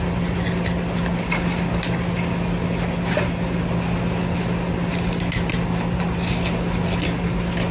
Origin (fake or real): real